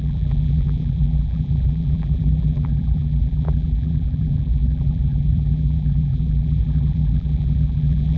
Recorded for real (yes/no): no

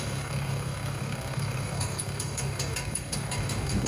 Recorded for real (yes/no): no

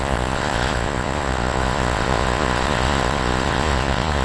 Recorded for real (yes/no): no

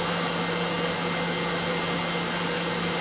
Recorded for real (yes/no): yes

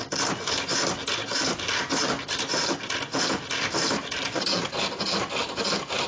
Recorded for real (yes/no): yes